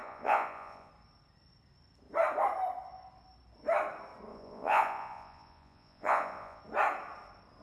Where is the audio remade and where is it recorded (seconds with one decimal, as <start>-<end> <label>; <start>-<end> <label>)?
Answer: 0.0-0.9 remade; 0.9-4.3 recorded; 4.3-6.6 remade; 6.6-7.6 recorded